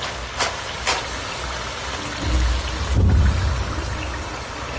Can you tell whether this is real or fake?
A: real